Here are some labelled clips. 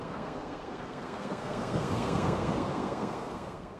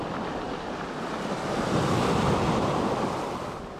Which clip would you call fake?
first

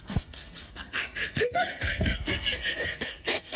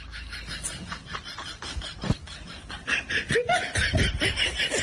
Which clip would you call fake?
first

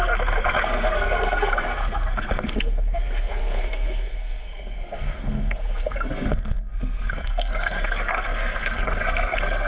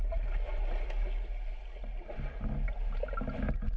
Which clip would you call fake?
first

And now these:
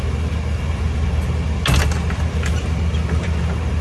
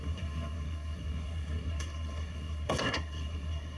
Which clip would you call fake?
second